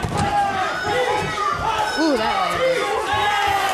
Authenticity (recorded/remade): recorded